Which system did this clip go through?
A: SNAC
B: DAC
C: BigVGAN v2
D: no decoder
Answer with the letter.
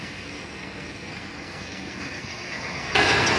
A